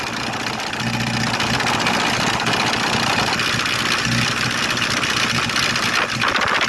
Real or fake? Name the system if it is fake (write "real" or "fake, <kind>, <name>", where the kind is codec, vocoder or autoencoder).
real